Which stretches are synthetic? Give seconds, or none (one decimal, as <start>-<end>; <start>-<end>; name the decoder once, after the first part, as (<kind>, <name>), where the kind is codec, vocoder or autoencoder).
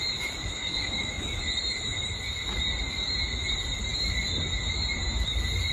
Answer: 0.6-1.4 (codec, DAC)